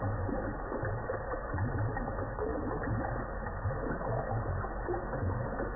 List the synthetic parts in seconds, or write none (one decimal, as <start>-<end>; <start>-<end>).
0.5-2.0

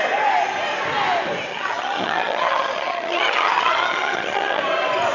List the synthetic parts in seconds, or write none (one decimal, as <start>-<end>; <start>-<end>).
1.5-4.6

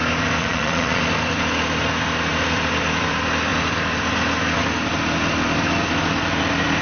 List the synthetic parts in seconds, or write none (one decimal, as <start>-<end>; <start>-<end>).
0.4-1.0

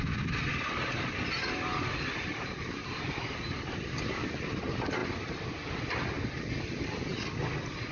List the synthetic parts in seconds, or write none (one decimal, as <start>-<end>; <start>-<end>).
none

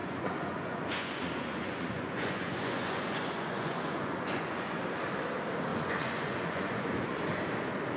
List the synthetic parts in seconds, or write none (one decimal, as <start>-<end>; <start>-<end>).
0.0-4.8; 5.7-7.2

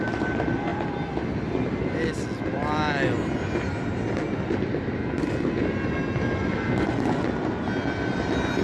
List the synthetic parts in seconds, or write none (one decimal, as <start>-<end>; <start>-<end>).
none

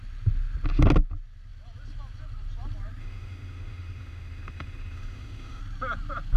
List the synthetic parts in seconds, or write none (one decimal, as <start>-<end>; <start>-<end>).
3.0-5.6

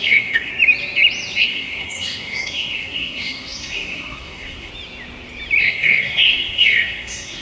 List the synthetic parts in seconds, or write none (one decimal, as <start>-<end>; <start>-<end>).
0.0-0.5; 1.4-4.7; 5.6-7.4